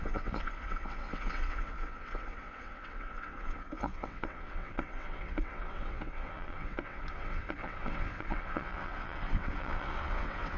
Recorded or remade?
remade